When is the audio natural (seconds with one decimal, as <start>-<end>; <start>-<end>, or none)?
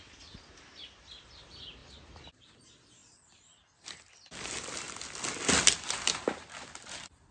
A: 0.0-7.3